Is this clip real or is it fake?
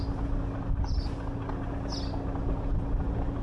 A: real